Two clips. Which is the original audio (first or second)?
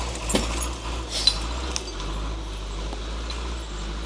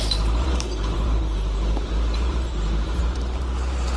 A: first